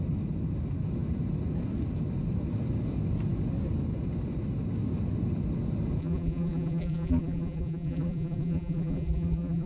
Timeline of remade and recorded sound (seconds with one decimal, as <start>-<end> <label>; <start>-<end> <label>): 0.0-6.0 recorded; 6.0-9.7 remade